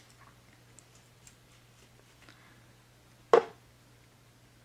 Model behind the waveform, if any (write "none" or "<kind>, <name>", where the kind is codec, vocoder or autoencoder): none